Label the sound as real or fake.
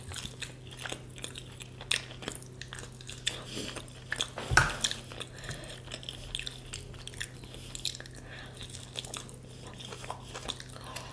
real